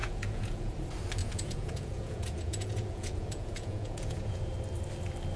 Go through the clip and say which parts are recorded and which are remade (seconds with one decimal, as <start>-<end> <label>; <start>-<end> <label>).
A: 0.0-0.7 remade; 0.7-1.2 recorded; 1.2-4.4 remade; 4.4-5.4 recorded